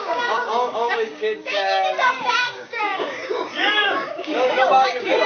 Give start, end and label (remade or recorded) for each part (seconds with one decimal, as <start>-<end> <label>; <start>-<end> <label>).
0.0-5.3 remade